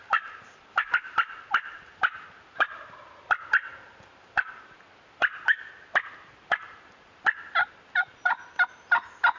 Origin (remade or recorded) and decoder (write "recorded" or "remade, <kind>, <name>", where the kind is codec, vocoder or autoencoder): recorded